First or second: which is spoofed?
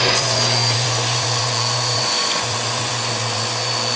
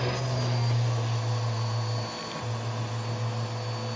first